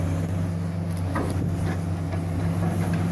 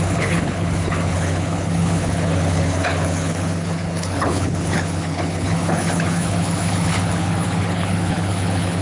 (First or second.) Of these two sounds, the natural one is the first